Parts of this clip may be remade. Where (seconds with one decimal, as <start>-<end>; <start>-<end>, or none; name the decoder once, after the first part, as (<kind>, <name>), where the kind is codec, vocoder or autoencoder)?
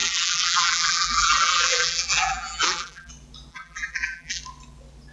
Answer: 0.0-3.1 (vocoder, BigVGAN v2); 3.5-4.4